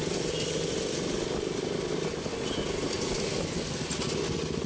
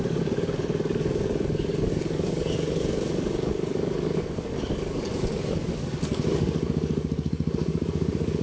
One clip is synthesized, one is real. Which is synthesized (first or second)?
second